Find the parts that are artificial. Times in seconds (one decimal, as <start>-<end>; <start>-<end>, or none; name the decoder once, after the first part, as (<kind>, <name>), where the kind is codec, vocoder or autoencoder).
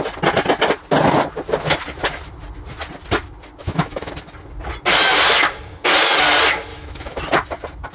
3.6-4.1 (autoencoder, DAC-VAE); 6.7-7.2